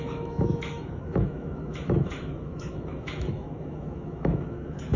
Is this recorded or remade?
remade